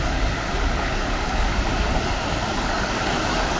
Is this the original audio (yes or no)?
no